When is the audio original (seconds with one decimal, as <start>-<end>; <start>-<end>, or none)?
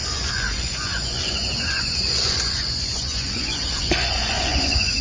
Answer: none